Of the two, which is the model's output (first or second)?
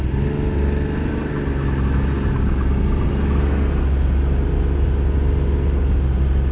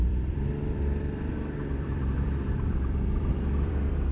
second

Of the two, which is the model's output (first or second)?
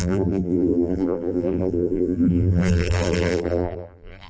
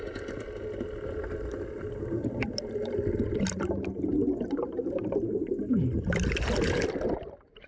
first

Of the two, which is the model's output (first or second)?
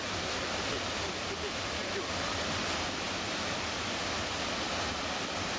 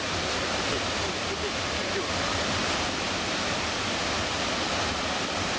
second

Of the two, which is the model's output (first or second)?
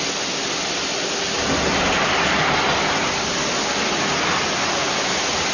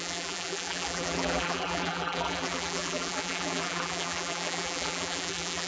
second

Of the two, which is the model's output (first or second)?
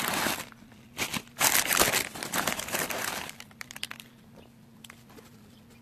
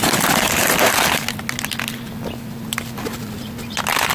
first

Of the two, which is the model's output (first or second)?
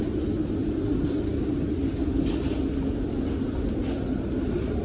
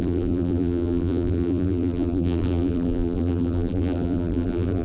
second